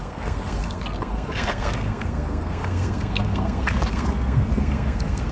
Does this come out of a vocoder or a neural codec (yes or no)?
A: yes